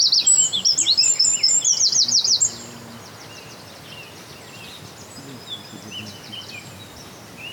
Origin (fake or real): real